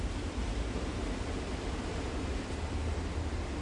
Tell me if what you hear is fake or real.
real